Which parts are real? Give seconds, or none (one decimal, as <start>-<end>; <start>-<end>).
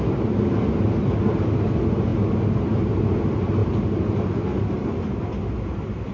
0.0-6.1